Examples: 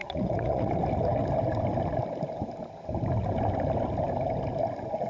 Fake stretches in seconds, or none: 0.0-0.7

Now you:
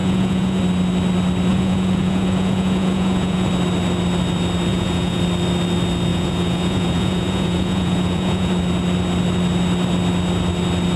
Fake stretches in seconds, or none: 0.0-0.6; 1.5-3.5; 4.7-5.2; 6.1-8.5

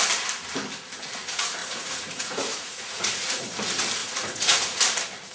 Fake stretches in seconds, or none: 1.6-3.4; 4.0-4.8

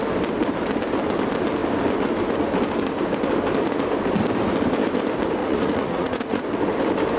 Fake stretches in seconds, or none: 5.4-6.4